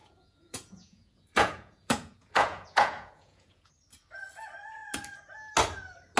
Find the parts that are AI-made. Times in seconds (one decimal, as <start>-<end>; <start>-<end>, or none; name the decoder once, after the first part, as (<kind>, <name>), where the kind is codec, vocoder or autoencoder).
0.0-3.7 (vocoder, Vocos)